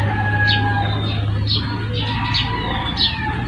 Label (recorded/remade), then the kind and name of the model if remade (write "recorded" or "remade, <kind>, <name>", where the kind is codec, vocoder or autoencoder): recorded